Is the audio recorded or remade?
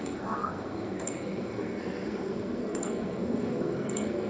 remade